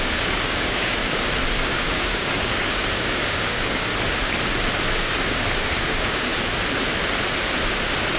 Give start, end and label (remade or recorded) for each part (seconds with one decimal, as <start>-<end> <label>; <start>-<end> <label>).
0.0-1.0 remade; 1.0-1.7 recorded; 1.7-3.9 remade; 3.9-5.0 recorded; 5.0-6.3 remade; 6.3-8.2 recorded